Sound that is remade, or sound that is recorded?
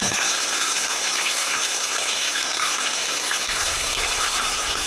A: remade